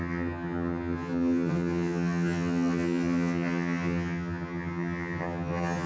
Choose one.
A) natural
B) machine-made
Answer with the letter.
B